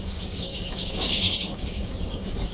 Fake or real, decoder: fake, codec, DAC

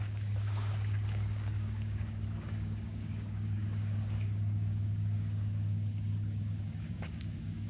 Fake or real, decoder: fake, codec, DAC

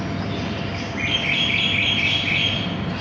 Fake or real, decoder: real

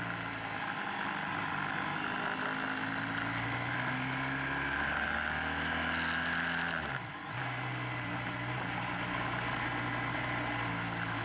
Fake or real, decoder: real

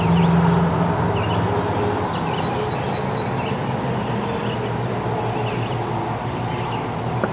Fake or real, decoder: real